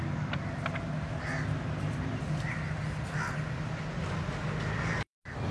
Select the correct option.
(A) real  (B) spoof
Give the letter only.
A